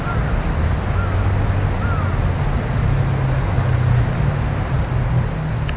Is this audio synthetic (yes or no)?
no